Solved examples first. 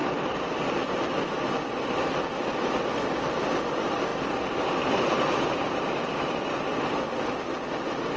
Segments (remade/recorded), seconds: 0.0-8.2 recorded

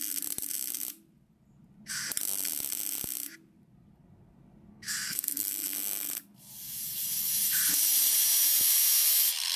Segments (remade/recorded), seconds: 0.0-4.7 recorded; 4.7-5.5 remade; 5.5-9.6 recorded

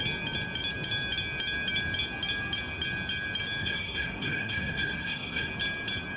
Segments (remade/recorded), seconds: 0.0-3.6 recorded; 3.6-5.5 remade; 5.5-6.2 recorded

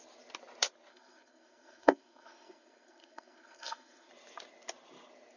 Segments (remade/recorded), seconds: 0.0-0.9 recorded; 0.9-4.1 remade; 4.1-5.4 recorded

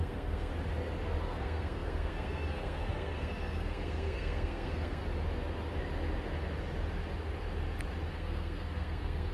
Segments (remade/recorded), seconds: 0.0-0.5 remade; 0.5-1.2 recorded; 1.2-5.0 remade; 5.0-8.1 recorded; 8.1-9.3 remade

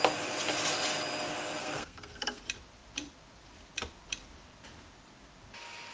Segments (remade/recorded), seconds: 0.0-1.6 recorded; 1.6-2.4 remade; 2.4-5.9 recorded

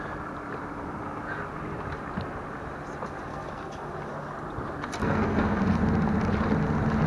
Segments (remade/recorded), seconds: 0.0-3.3 recorded; 3.3-3.9 remade; 3.9-5.0 recorded; 5.0-5.6 remade; 5.6-7.1 recorded